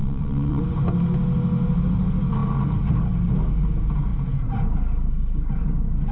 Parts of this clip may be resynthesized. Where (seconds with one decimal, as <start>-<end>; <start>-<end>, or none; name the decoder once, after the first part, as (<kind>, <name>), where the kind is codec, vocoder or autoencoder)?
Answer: 0.0-0.6 (vocoder, WaveNeXt)